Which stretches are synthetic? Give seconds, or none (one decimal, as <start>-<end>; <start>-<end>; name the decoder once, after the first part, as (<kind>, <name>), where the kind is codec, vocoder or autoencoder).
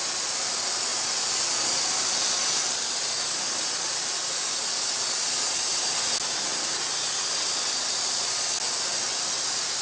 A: none